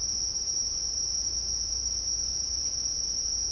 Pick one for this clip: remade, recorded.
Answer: remade